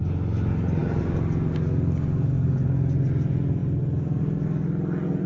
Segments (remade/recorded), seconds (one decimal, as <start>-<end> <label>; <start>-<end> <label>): 0.0-5.3 recorded